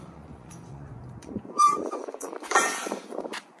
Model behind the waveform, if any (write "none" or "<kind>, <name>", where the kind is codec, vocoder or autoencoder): vocoder, Vocos